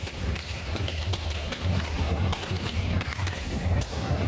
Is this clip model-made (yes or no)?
yes